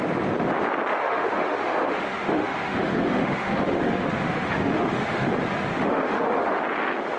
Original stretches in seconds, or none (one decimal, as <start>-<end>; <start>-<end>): 0.0-1.0; 5.3-5.7; 6.6-7.2